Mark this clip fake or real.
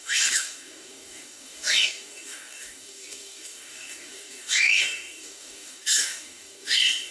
fake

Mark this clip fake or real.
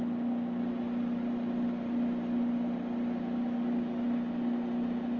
real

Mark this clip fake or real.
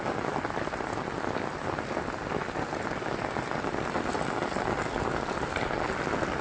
real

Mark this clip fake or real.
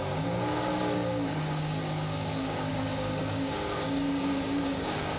fake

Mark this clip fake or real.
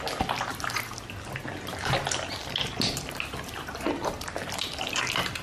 real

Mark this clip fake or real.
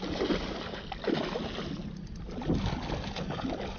real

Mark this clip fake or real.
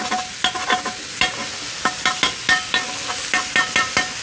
real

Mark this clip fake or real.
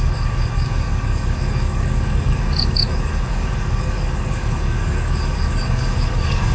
fake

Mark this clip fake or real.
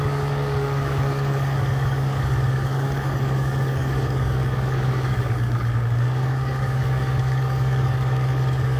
fake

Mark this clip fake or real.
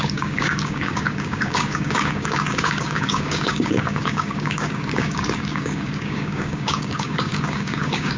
fake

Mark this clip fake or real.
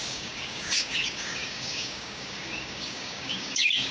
fake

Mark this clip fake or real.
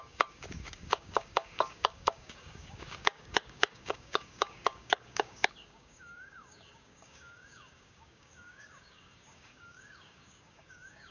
fake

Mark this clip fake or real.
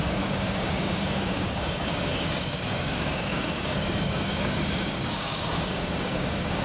fake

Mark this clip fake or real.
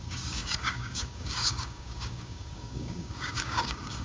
fake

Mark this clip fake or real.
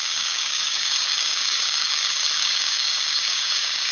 fake